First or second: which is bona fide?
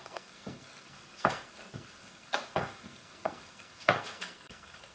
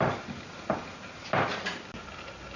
second